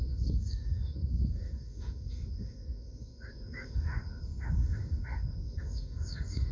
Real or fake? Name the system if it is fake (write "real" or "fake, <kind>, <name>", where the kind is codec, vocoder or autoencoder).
fake, autoencoder, DAC-VAE